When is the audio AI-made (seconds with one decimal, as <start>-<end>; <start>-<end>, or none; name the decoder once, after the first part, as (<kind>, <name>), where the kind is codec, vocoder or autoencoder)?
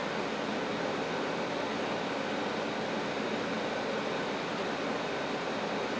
none